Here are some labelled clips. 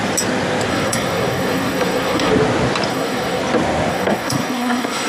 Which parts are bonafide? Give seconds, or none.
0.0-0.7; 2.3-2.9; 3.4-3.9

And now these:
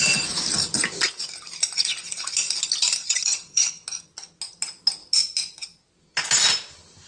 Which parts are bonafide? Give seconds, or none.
0.0-3.0; 3.7-7.1

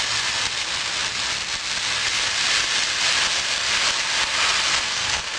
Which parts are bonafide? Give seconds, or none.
0.0-4.7

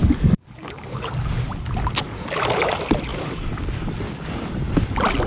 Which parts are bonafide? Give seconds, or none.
1.1-3.1; 3.8-5.3

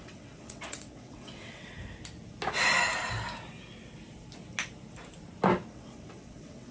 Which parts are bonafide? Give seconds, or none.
1.7-5.7

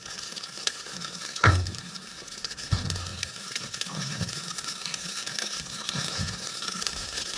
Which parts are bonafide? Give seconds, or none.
none